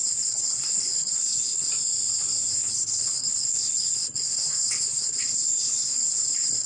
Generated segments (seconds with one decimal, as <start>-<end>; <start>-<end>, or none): 0.0-1.7; 2.5-6.7